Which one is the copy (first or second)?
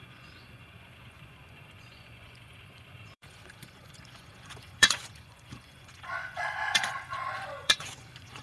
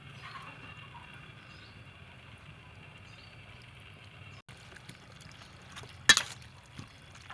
first